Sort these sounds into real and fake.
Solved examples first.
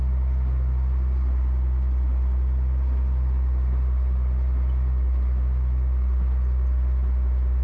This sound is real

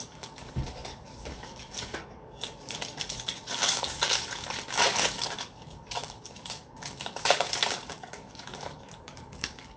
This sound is fake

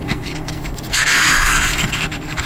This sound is fake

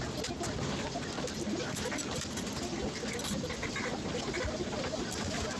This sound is real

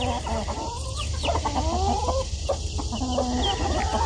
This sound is real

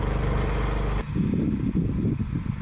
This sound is real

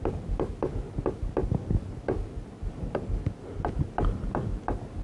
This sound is real